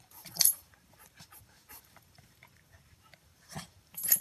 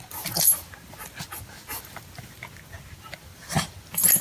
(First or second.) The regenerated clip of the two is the first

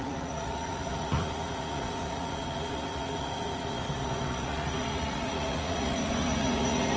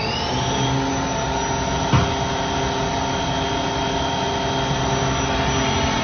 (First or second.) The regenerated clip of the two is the first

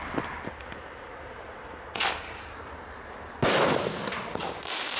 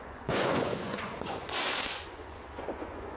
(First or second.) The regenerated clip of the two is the second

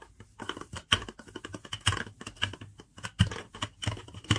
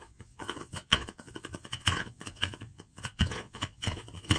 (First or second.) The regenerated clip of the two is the second